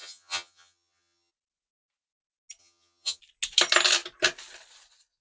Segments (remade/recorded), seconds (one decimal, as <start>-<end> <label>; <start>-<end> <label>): 0.0-1.3 remade; 1.3-2.6 recorded; 2.6-3.2 remade; 3.2-5.2 recorded